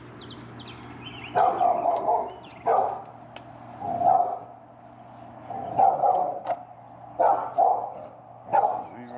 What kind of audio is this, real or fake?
real